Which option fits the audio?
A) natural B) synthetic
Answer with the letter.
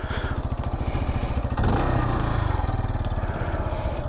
A